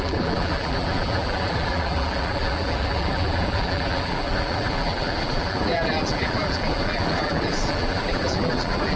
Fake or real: fake